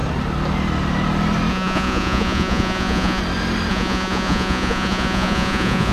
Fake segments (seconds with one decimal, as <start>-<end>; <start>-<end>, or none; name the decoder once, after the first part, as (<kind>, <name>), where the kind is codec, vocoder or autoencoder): 1.5-3.2 (vocoder, Vocos); 3.7-5.9